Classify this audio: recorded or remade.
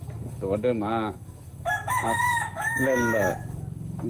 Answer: remade